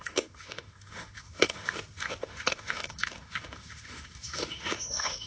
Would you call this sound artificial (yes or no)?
yes